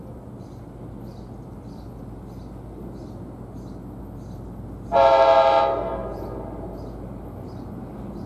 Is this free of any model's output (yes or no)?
yes